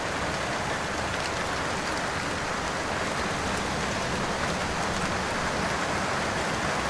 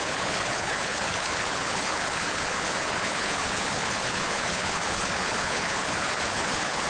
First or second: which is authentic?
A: first